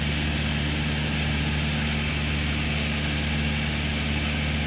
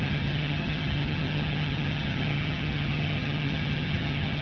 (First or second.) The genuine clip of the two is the first